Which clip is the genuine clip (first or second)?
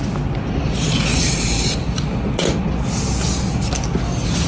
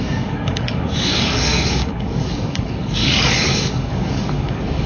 first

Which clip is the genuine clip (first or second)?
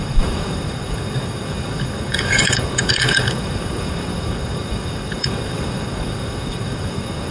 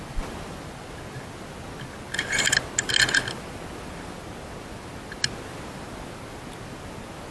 second